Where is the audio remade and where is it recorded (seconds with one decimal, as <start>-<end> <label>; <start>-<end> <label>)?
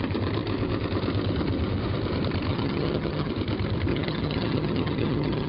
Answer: 0.0-2.5 recorded; 2.5-3.3 remade; 3.3-3.9 recorded; 3.9-5.5 remade